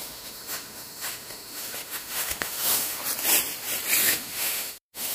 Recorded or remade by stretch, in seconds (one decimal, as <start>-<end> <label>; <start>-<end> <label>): 0.0-3.0 remade; 3.0-4.0 recorded; 4.0-5.1 remade